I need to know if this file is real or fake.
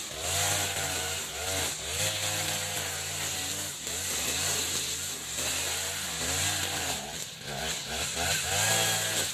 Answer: real